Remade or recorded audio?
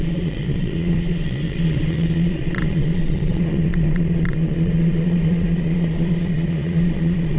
remade